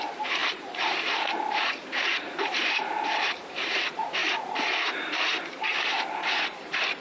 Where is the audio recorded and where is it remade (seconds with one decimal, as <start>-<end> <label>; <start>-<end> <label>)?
0.0-4.2 remade; 4.2-4.9 recorded; 4.9-7.0 remade